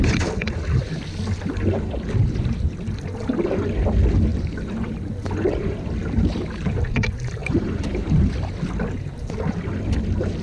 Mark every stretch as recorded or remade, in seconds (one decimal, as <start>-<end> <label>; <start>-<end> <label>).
0.0-4.3 recorded; 4.3-5.1 remade; 5.1-7.4 recorded; 7.4-8.3 remade; 8.3-10.4 recorded